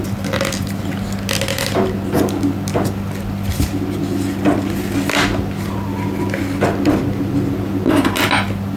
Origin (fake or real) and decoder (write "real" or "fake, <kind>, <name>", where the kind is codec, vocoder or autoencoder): real